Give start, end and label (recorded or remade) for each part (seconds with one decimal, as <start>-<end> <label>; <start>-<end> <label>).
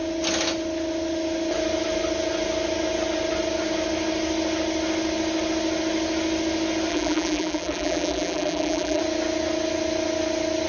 0.0-6.9 recorded; 6.9-9.0 remade; 9.0-10.7 recorded